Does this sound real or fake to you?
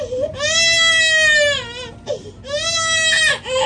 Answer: real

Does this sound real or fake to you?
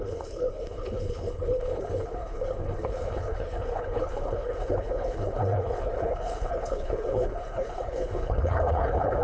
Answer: fake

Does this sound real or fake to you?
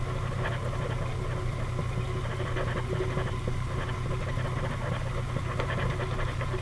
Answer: real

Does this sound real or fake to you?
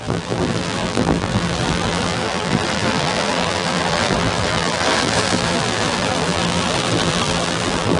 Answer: fake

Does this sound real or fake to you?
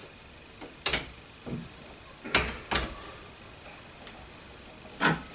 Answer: real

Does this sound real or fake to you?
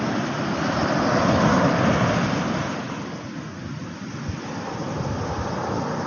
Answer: real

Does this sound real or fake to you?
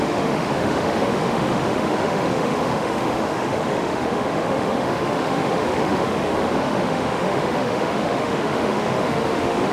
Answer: fake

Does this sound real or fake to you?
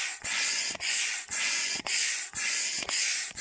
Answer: fake